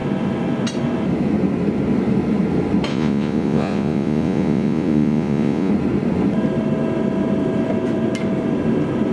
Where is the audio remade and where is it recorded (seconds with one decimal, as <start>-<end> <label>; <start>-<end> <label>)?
0.0-2.9 recorded; 2.9-5.7 remade; 5.7-9.1 recorded